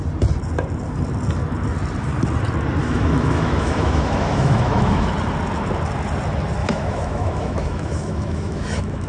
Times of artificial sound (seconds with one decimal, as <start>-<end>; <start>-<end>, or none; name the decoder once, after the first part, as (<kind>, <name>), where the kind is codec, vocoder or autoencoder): 2.8-5.1 (autoencoder, DAC-VAE); 6.6-9.1